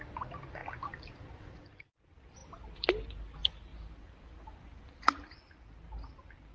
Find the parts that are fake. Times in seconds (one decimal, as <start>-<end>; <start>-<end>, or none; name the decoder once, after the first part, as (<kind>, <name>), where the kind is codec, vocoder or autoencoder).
none